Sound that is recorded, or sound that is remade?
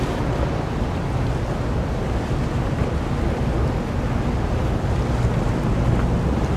recorded